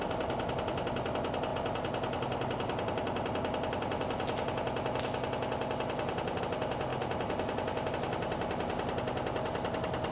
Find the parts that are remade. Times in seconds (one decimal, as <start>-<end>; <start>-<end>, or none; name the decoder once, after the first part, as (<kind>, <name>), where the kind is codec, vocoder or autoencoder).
none